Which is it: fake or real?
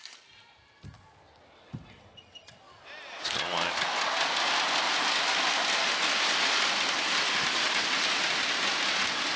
real